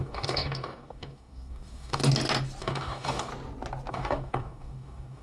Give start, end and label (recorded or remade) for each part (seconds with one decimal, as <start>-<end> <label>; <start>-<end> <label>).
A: 0.0-2.0 remade; 2.0-2.6 recorded; 2.6-3.3 remade; 3.3-3.9 recorded; 3.9-5.2 remade